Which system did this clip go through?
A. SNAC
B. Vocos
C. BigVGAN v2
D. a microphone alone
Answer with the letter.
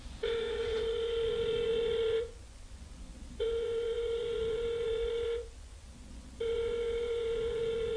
B